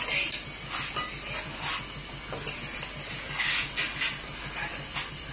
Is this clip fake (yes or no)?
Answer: no